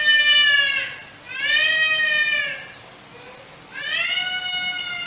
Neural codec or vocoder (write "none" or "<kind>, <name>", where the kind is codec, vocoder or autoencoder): none